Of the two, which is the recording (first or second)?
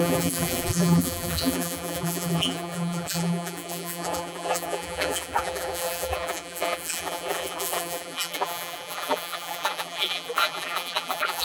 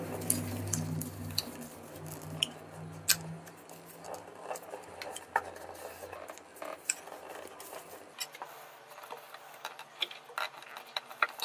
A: second